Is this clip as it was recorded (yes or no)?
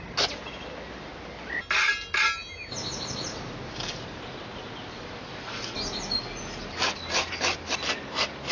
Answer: yes